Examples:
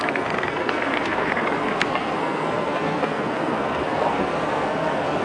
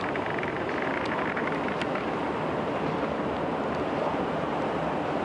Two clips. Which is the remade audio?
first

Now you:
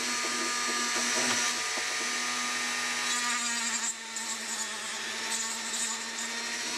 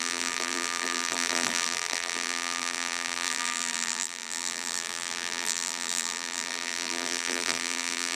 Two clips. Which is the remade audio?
second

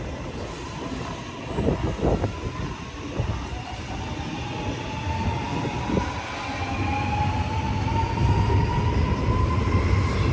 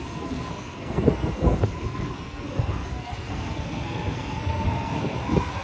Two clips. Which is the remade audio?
second